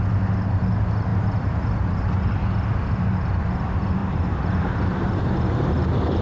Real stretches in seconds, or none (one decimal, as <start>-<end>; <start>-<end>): 0.0-4.0; 5.2-6.2